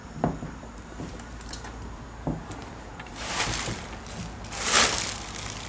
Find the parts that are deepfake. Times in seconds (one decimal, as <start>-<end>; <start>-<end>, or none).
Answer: 0.0-3.4